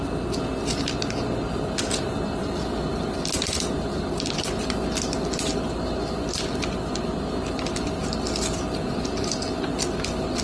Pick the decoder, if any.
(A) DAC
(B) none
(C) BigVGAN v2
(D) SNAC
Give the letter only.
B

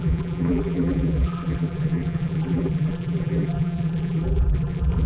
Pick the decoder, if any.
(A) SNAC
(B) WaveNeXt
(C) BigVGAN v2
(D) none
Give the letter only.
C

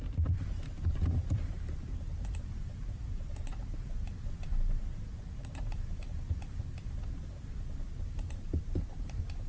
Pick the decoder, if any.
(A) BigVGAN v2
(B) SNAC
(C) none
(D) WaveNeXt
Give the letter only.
A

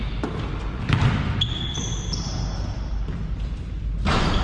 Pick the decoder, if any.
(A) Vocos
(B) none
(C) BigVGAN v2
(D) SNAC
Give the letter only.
C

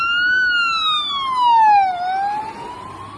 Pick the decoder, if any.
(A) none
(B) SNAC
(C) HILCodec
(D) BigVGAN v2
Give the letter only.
A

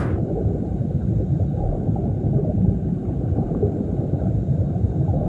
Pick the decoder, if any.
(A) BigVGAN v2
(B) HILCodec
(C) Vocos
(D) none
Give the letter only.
D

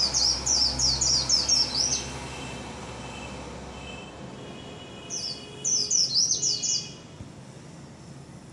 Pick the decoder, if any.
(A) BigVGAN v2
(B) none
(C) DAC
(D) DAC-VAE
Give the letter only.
B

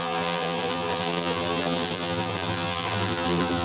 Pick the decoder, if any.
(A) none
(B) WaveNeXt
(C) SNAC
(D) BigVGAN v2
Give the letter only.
D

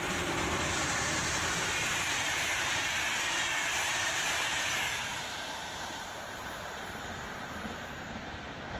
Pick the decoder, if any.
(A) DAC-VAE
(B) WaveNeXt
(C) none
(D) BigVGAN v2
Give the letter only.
D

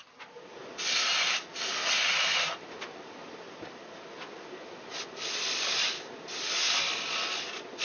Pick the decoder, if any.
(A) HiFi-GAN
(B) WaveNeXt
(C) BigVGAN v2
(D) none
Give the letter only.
D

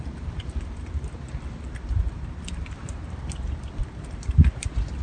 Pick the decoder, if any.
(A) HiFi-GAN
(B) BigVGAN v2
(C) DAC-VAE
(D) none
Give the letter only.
B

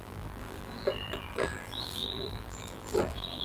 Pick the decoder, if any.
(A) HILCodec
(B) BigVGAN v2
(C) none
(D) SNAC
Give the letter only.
B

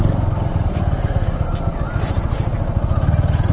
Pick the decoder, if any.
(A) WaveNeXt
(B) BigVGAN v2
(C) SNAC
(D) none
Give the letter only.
D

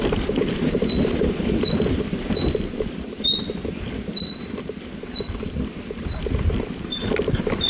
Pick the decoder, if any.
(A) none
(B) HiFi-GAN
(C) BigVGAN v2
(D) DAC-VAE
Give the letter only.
C